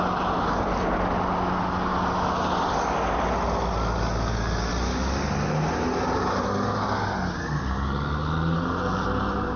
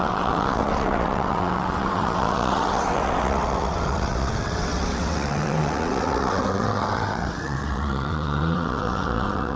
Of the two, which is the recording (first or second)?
first